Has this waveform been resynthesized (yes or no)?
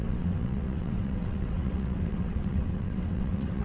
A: yes